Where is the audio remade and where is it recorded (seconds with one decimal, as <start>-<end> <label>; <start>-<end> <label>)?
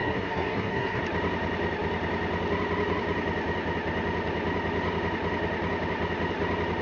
0.0-1.0 remade; 1.0-6.8 recorded